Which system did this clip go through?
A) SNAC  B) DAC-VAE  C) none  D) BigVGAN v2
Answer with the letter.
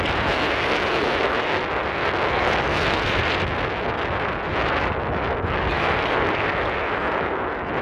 C